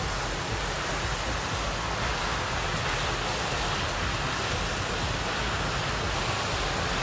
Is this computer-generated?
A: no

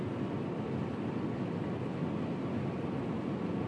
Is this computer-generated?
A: no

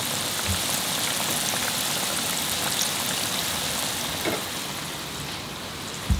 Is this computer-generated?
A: no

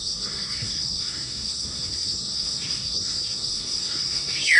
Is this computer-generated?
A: yes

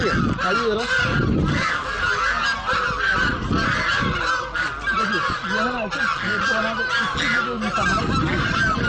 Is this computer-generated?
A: no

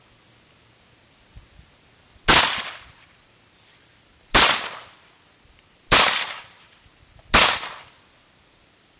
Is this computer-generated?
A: no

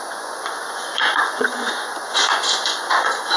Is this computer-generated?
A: yes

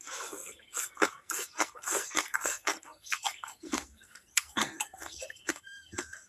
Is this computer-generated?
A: yes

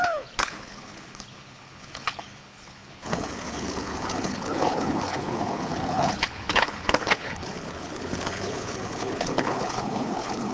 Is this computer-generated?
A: yes